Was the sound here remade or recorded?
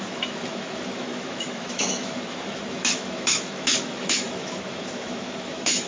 remade